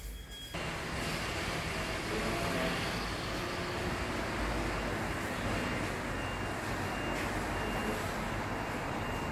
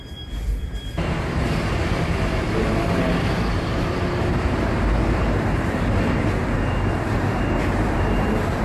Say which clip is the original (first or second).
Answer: first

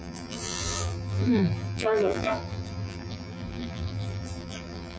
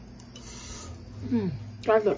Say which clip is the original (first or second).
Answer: second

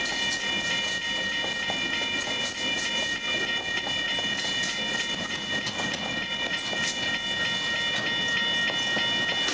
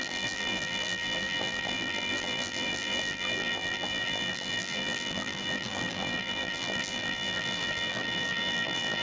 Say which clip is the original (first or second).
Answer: first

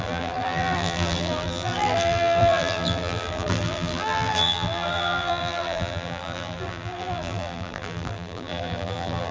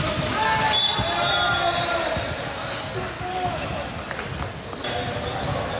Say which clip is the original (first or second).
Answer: second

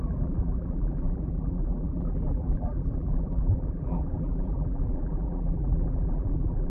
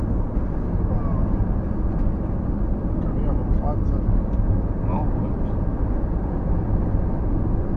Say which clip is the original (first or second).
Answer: second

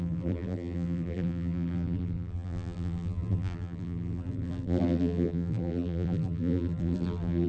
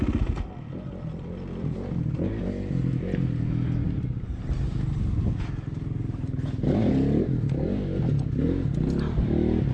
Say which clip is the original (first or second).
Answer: second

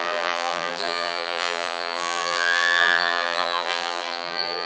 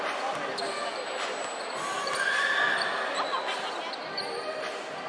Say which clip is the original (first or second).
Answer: second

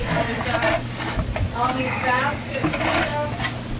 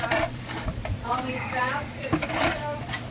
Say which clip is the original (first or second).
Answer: first